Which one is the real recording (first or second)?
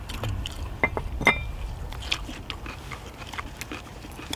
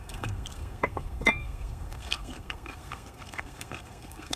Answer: first